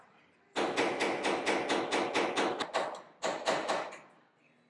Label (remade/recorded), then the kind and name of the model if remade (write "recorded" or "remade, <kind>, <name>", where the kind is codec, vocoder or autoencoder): recorded